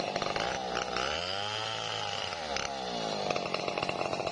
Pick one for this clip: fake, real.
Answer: real